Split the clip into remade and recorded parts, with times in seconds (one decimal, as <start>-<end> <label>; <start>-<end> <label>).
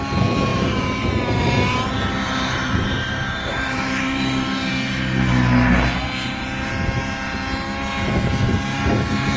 0.0-0.5 recorded; 0.5-1.9 remade; 1.9-2.6 recorded; 2.6-4.7 remade; 4.7-8.7 recorded; 8.7-9.4 remade